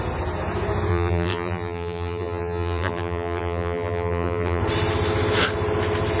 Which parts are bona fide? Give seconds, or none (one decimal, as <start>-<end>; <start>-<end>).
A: 0.0-0.9; 4.6-6.2